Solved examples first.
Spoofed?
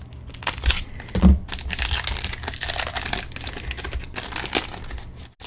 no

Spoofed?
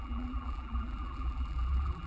yes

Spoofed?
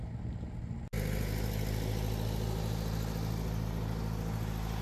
no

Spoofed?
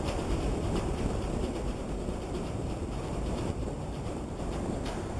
yes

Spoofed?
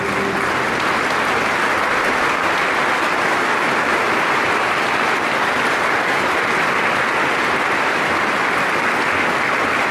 no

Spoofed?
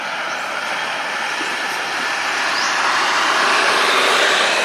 yes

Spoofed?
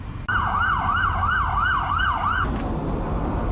no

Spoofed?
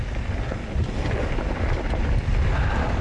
no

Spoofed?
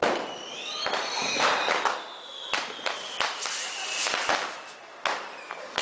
no